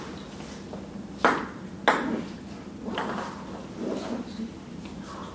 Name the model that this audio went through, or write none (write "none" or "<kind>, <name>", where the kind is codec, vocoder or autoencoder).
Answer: none